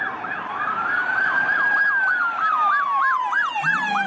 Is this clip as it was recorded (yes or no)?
no